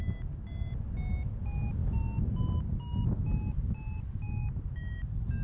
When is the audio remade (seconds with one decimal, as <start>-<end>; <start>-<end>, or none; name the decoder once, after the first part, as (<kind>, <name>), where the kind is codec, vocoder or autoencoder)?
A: none